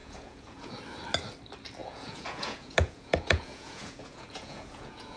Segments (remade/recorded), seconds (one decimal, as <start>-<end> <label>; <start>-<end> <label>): 0.0-0.7 remade; 0.7-1.8 recorded; 1.8-5.2 remade